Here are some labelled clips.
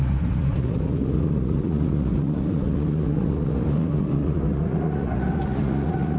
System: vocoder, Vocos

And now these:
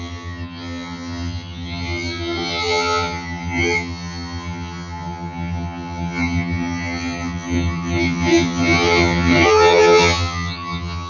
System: vocoder, HiFi-GAN